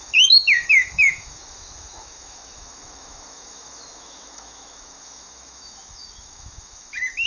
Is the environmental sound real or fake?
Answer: fake